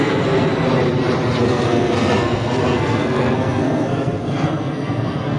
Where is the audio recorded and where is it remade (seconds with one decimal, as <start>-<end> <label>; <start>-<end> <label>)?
0.0-0.5 remade; 0.5-1.4 recorded; 1.4-5.4 remade